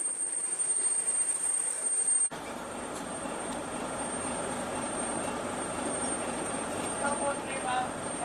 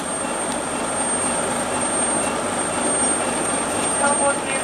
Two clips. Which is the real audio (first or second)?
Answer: second